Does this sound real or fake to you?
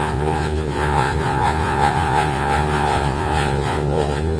fake